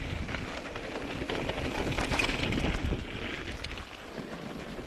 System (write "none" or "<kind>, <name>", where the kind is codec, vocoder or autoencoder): none